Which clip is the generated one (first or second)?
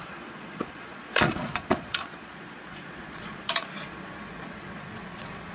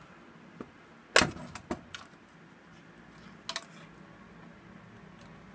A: first